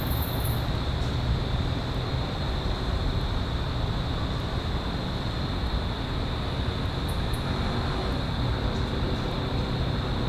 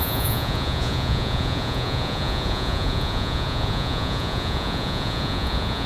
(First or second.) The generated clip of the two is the second